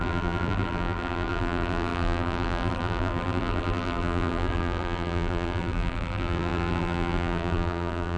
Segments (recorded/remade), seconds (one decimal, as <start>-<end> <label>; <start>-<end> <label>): 0.0-8.2 remade